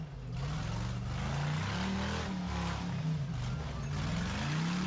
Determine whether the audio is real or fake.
real